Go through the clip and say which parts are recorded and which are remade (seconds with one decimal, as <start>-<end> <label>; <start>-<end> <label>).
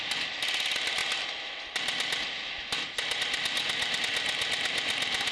0.0-5.3 recorded